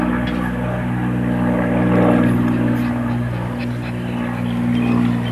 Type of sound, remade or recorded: recorded